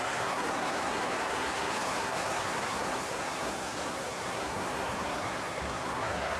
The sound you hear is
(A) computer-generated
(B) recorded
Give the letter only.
A